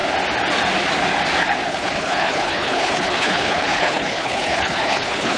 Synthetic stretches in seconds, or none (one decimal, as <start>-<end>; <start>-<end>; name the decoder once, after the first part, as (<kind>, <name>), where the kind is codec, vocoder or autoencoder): 1.7-5.4 (codec, HILCodec)

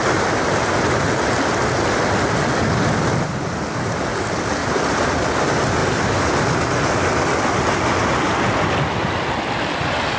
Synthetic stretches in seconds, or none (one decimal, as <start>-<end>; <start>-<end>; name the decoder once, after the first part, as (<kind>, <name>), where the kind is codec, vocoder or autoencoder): 4.6-5.1 (vocoder, BigVGAN v2)

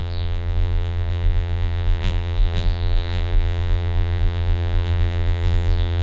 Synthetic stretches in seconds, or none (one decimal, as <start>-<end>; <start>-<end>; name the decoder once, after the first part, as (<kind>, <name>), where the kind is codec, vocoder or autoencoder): 0.0-6.0 (vocoder, BigVGAN v2)

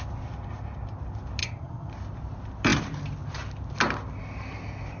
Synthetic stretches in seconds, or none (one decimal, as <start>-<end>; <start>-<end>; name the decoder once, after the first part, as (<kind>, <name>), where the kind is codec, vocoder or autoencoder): 1.4-1.9 (vocoder, HiFi-GAN)

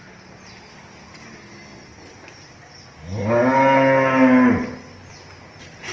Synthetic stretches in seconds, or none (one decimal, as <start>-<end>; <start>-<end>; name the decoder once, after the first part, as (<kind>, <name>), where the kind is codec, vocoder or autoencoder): none